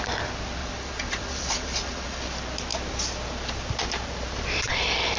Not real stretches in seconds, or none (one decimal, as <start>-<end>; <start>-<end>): 0.6-2.2

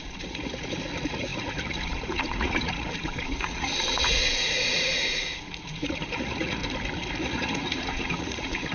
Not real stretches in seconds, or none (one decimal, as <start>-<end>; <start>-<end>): 0.0-6.6; 7.2-8.7

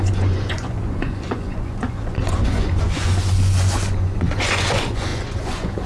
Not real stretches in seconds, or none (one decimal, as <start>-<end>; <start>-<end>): 0.0-5.9